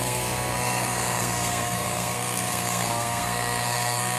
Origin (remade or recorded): remade